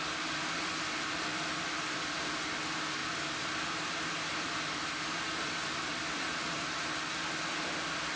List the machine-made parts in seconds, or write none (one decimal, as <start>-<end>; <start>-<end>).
1.3-2.6; 3.0-8.2